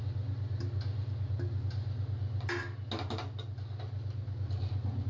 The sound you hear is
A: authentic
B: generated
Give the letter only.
A